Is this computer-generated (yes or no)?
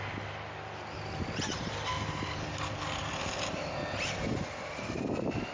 no